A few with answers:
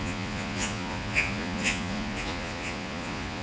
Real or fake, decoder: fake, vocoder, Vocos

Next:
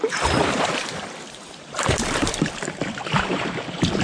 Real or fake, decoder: fake, vocoder, BigVGAN v2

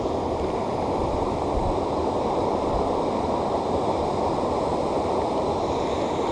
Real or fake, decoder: real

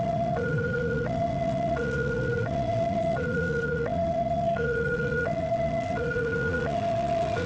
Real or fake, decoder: fake, vocoder, Vocos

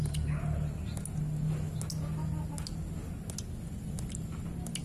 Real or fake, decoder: real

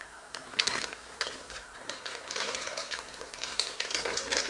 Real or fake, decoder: fake, codec, SNAC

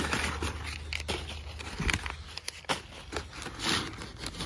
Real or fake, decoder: real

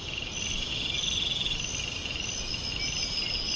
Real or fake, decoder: real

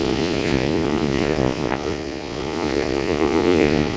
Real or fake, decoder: fake, vocoder, Vocos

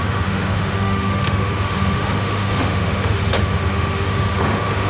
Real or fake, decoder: fake, autoencoder, DAC-VAE